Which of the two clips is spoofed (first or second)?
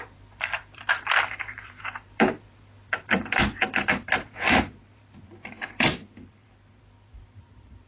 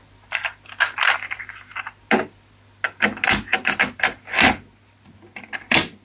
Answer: first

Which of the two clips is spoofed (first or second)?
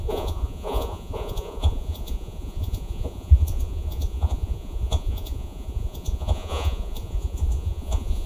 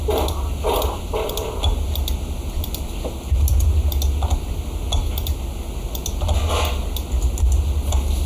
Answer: first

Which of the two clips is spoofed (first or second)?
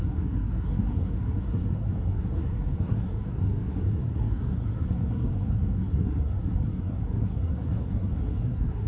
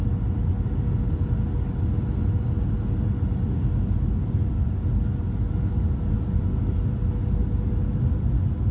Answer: first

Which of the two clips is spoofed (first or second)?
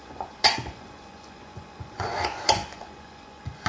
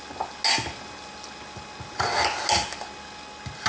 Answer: first